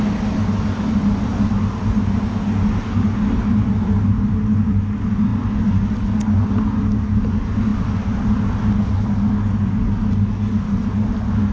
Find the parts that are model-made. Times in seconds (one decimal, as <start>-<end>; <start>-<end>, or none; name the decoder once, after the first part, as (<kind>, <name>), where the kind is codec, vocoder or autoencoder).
7.7-8.4 (vocoder, BigVGAN v2)